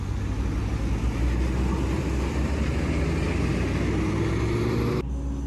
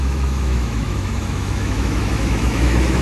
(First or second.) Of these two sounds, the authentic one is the first